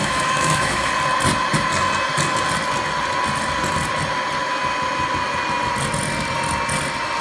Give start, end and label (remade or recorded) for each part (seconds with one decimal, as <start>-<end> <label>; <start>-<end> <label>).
0.0-0.9 remade; 0.9-7.2 recorded